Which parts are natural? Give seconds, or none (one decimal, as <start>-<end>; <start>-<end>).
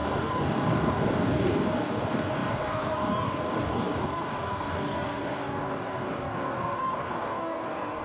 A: none